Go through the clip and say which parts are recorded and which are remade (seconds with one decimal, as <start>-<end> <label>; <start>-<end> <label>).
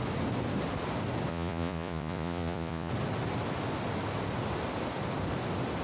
0.0-1.3 recorded; 1.3-2.9 remade; 2.9-5.8 recorded